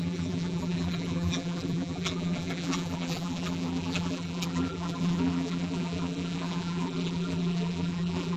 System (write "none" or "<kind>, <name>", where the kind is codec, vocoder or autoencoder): vocoder, BigVGAN v2